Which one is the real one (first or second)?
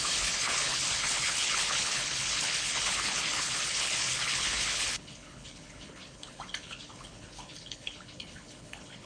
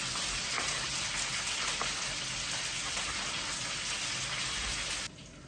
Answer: second